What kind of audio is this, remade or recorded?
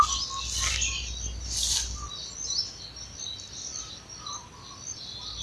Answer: recorded